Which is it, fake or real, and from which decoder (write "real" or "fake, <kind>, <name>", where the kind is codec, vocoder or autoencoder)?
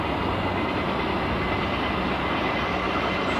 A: real